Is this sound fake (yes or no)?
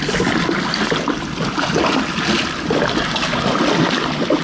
no